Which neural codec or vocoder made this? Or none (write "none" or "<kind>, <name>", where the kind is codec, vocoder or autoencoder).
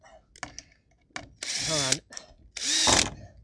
none